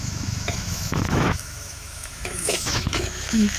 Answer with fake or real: fake